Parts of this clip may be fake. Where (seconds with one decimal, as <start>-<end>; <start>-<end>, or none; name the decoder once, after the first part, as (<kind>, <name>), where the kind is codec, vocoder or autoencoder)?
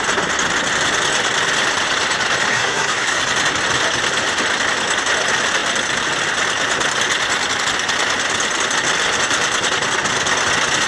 2.5-3.2 (codec, SNAC)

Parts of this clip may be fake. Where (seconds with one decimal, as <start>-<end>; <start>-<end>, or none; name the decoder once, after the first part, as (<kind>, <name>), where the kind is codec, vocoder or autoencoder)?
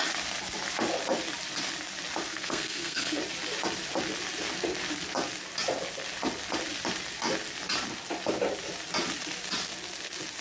2.3-3.2 (codec, SNAC)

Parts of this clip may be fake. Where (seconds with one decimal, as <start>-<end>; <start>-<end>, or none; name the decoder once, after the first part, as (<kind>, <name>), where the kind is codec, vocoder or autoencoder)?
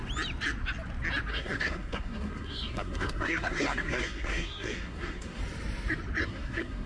1.3-5.4 (codec, SNAC); 6.2-6.9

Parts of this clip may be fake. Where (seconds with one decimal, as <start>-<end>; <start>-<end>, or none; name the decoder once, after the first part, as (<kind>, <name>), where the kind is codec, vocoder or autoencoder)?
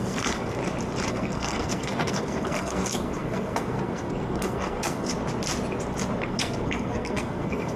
0.0-0.6 (codec, SNAC); 1.1-5.1; 6.2-7.8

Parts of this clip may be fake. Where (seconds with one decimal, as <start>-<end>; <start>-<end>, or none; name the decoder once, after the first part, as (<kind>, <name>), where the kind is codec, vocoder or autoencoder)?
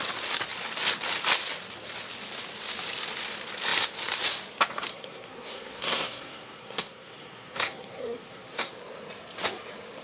4.9-8.7 (codec, SNAC)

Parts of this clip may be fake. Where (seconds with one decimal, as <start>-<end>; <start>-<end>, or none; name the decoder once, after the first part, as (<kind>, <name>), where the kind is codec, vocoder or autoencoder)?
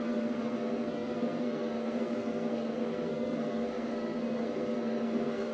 0.0-5.5 (codec, SNAC)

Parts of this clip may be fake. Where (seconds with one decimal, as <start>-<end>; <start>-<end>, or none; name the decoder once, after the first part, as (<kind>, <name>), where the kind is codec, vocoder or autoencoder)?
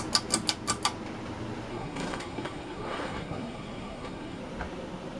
1.7-4.4 (codec, SNAC)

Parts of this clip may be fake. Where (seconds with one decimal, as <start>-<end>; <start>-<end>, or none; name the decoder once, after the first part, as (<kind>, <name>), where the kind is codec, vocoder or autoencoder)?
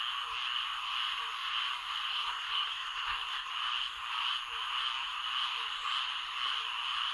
2.1-3.5 (codec, SNAC)